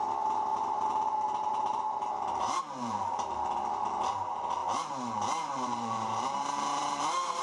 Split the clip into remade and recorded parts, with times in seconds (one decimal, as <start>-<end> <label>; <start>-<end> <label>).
0.0-7.4 remade